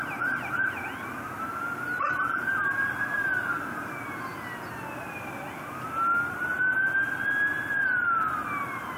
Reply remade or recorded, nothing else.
recorded